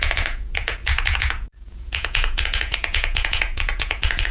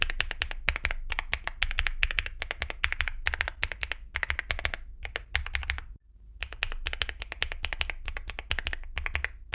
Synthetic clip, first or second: first